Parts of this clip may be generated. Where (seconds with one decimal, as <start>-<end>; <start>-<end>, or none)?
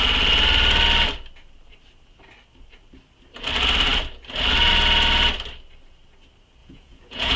6.6-7.4